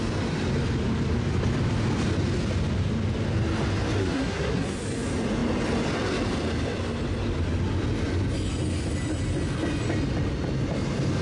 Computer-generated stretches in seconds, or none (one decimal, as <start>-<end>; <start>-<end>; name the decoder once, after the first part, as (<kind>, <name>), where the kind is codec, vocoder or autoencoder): 4.0-4.8 (codec, SNAC)